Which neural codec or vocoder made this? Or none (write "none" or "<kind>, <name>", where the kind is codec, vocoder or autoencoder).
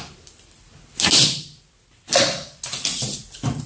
none